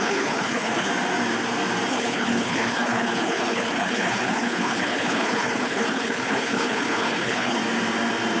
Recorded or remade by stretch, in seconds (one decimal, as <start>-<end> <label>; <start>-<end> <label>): 0.0-0.9 remade; 0.9-1.9 recorded; 1.9-7.6 remade; 7.6-8.4 recorded